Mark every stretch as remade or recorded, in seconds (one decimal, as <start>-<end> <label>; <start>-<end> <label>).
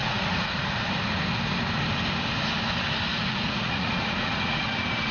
0.0-0.6 remade; 0.6-3.1 recorded; 3.1-5.1 remade